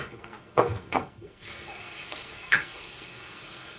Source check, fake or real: fake